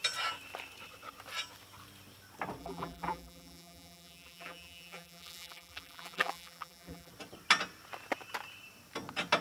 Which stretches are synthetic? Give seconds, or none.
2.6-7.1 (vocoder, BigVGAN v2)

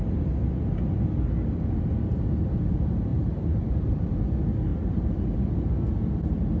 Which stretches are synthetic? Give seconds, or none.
3.1-4.1 (vocoder, BigVGAN v2); 4.7-5.5